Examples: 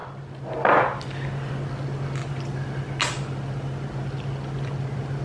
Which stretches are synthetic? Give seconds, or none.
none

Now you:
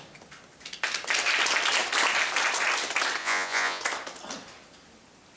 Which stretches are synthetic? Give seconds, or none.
3.2-3.8 (vocoder, Vocos)

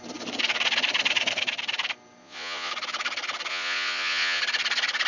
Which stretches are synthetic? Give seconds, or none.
2.2-2.7 (vocoder, Vocos); 3.5-4.4

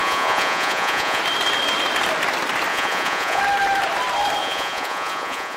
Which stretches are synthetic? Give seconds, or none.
0.0-1.2 (vocoder, Vocos); 2.7-3.4; 4.4-5.6